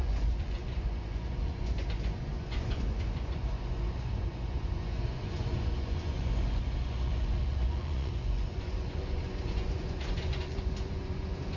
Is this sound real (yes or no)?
no